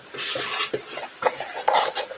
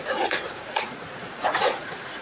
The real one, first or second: first